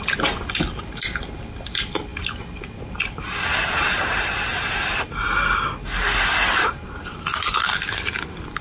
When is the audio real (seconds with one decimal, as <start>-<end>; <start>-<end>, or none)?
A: 0.0-8.6